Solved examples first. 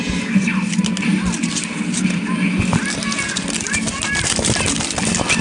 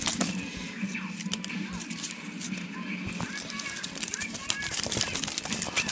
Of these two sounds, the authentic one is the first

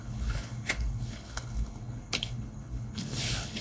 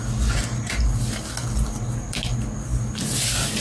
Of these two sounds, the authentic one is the second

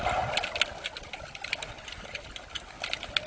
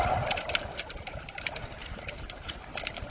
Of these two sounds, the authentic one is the first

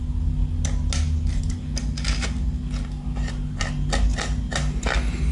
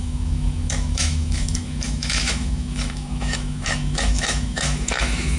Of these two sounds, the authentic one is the first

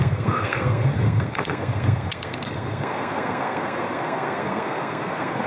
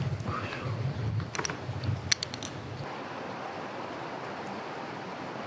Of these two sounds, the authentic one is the second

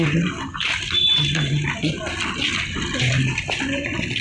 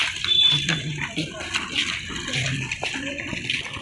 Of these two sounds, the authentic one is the first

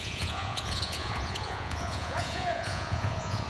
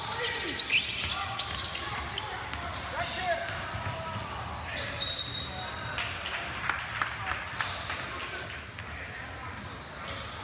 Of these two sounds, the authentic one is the second